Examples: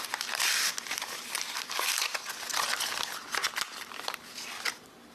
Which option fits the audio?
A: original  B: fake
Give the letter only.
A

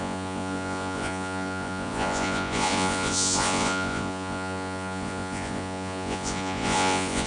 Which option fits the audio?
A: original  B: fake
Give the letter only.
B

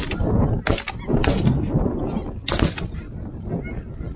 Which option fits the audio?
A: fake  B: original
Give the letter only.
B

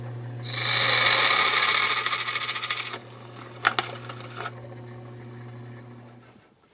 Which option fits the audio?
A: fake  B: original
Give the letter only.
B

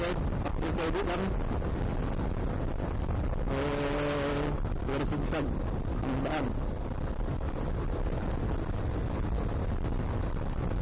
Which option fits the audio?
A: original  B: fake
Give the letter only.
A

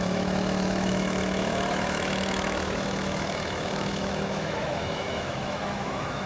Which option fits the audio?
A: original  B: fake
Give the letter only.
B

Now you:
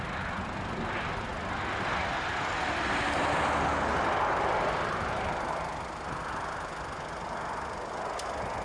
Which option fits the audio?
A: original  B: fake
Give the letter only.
A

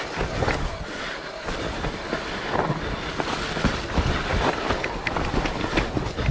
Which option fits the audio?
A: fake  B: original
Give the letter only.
B